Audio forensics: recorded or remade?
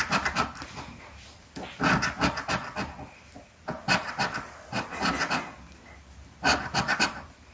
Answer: recorded